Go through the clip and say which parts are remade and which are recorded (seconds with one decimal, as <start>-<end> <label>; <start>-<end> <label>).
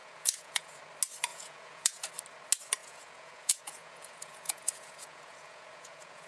0.0-0.8 remade; 0.8-1.3 recorded; 1.3-2.1 remade; 2.1-2.8 recorded; 2.8-6.3 remade